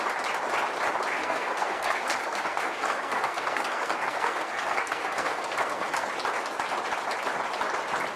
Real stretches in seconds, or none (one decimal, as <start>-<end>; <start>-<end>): 0.0-1.2; 6.1-8.2